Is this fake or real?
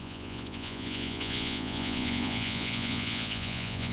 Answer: fake